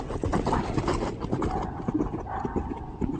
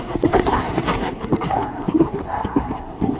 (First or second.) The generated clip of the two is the second